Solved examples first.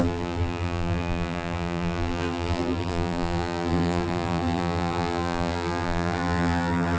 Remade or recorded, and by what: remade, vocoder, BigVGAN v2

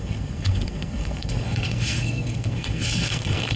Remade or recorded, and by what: remade, codec, SNAC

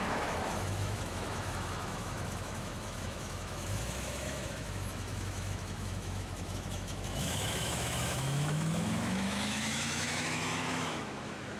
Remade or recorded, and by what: remade, autoencoder, DAC-VAE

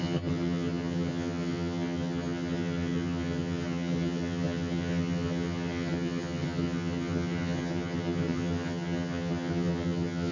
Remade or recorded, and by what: remade, vocoder, HiFi-GAN